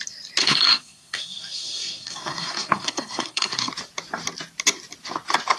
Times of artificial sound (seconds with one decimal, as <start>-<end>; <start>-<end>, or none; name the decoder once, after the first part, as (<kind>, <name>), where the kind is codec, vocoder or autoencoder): 0.4-3.7 (codec, SNAC)

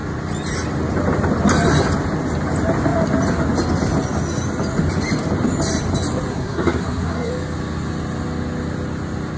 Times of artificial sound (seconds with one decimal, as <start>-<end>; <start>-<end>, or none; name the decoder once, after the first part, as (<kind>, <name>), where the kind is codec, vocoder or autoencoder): 6.3-7.3 (codec, SNAC)

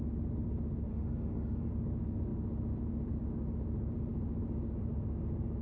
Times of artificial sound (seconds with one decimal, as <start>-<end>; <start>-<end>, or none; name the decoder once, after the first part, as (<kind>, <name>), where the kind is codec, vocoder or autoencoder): 0.9-1.7 (autoencoder, DAC-VAE)

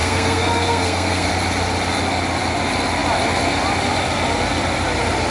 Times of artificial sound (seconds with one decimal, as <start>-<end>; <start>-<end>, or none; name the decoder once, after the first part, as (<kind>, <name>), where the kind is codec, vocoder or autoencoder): 0.0-1.3 (codec, SNAC)

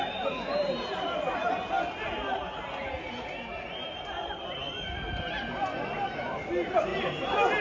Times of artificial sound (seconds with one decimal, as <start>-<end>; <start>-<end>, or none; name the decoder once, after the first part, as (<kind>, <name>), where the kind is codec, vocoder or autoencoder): none

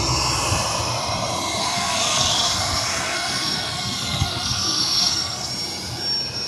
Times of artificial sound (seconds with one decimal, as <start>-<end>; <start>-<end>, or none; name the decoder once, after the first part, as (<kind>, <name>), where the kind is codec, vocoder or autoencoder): 1.6-5.5 (codec, SNAC)

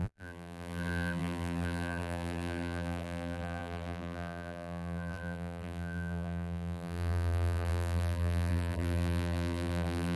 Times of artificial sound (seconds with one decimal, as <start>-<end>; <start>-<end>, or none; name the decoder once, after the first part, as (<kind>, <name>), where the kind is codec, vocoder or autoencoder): 0.0-10.2 (vocoder, BigVGAN v2)